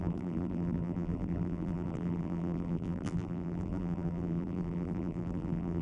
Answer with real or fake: fake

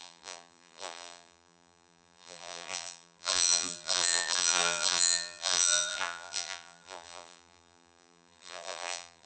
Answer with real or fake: fake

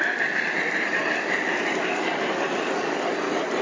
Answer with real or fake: fake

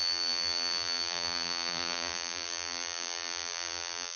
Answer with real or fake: fake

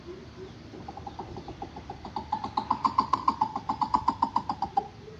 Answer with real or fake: real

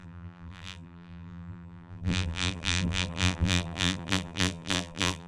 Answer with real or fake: fake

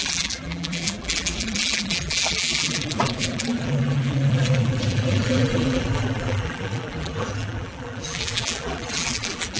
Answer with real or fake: fake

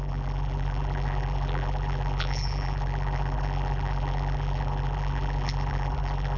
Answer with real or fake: fake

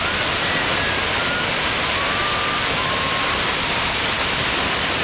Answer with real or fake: real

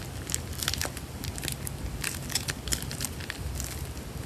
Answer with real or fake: real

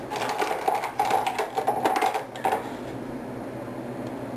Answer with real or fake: real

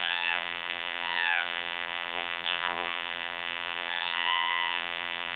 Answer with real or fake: fake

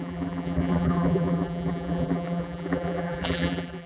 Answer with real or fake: fake